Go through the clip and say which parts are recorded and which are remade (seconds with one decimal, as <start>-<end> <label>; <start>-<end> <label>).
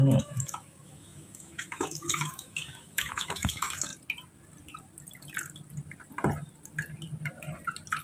0.0-3.9 remade; 3.9-8.0 recorded